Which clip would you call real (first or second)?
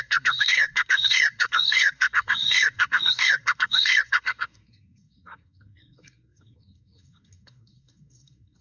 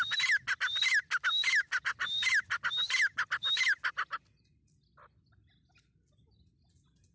second